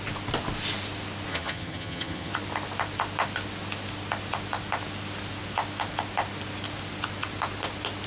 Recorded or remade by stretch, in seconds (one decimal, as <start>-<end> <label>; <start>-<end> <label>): 0.0-1.3 recorded; 1.3-2.3 remade; 2.3-8.1 recorded